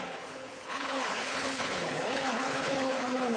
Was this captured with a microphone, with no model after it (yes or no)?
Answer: no